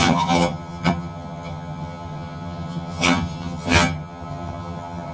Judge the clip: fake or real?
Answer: fake